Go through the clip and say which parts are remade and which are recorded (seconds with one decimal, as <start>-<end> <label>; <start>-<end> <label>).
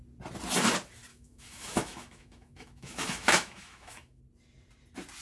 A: 0.0-1.1 recorded; 1.1-4.2 remade; 4.2-5.2 recorded